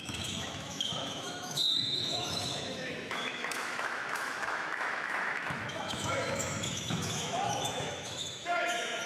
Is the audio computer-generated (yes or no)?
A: yes